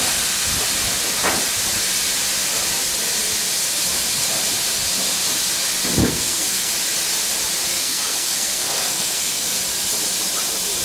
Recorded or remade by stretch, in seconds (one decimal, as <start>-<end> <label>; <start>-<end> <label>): 0.0-6.0 recorded; 6.0-6.7 remade; 6.7-7.7 recorded; 7.7-9.6 remade; 9.6-10.8 recorded